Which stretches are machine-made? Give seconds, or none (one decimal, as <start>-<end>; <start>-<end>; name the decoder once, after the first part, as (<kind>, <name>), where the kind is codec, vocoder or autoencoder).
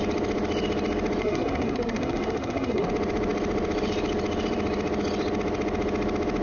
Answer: 1.2-2.9 (codec, SNAC)